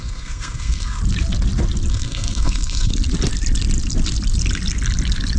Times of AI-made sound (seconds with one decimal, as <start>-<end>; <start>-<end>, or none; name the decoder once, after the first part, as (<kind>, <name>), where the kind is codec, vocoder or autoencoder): 0.0-1.0 (codec, SNAC); 1.9-2.9